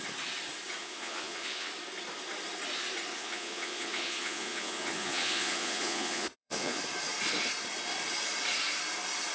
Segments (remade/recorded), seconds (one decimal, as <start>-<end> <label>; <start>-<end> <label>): 0.0-0.8 recorded; 0.8-1.7 remade; 1.7-3.1 recorded; 3.1-6.8 remade; 6.8-9.3 recorded